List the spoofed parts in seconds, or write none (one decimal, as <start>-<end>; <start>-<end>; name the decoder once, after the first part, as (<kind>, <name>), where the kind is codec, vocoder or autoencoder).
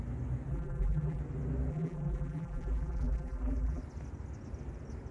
0.5-1.2 (vocoder, BigVGAN v2); 1.7-3.8